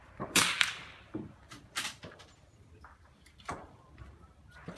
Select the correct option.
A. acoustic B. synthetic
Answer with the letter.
B